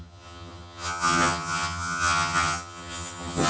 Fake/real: fake